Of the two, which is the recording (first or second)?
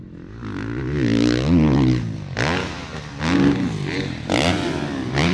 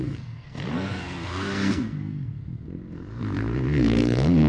first